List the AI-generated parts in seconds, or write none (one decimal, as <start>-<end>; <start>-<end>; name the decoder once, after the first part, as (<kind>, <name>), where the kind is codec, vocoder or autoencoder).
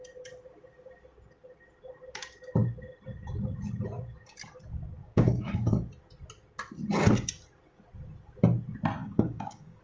5.0-5.7 (codec, DAC); 9.0-9.8